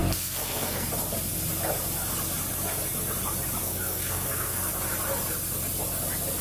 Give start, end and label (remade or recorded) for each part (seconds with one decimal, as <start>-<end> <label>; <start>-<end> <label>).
0.0-0.9 remade; 0.9-3.6 recorded; 3.6-4.7 remade; 4.7-6.4 recorded